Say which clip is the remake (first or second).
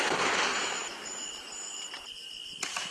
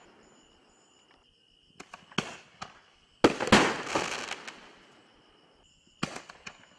first